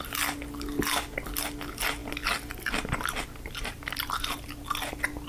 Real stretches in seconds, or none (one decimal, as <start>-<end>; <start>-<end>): 0.0-5.3